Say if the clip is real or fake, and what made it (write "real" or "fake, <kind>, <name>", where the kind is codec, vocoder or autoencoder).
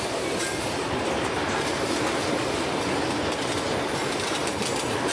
real